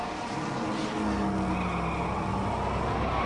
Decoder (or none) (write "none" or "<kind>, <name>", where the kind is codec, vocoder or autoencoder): none